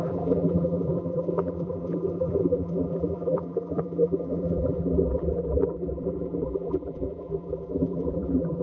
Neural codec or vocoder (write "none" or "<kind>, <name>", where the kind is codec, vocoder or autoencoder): vocoder, BigVGAN v2